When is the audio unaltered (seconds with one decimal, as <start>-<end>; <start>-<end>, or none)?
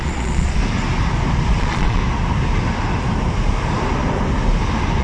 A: 0.6-1.5; 2.0-5.0